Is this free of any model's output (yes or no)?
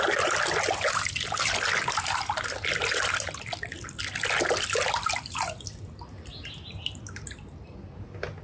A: yes